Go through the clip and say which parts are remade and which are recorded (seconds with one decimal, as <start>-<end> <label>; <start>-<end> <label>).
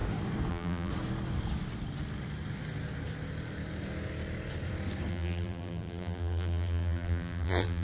0.0-0.5 recorded; 0.5-0.9 remade; 0.9-5.1 recorded; 5.1-7.8 remade